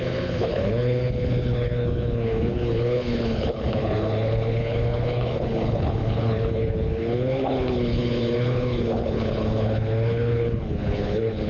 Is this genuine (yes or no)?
no